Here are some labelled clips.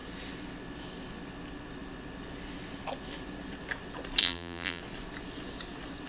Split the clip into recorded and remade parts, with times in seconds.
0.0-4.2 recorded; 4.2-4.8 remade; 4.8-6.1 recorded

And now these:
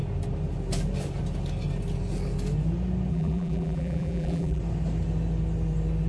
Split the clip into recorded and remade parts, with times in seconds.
0.0-3.1 recorded; 3.1-4.6 remade; 4.6-6.1 recorded

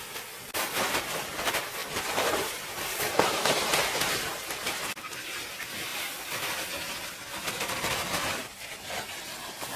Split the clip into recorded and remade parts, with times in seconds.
0.0-1.8 recorded; 1.8-5.5 remade; 5.5-8.4 recorded; 8.4-9.8 remade

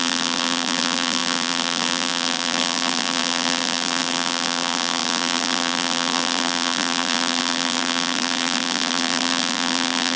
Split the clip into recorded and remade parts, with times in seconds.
0.0-10.2 remade

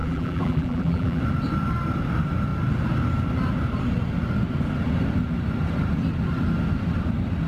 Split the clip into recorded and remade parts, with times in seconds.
0.0-1.2 remade; 1.2-7.5 recorded

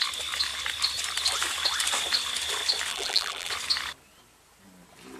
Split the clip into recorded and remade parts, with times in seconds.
0.0-2.9 recorded; 2.9-3.5 remade; 3.5-5.2 recorded

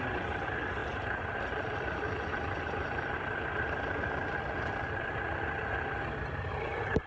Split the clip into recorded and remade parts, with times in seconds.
0.0-0.8 recorded; 0.8-5.0 remade; 5.0-7.1 recorded

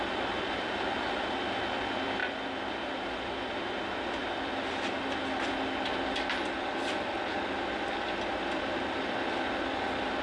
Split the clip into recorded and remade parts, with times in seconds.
0.0-10.2 recorded